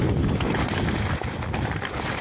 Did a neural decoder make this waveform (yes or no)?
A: no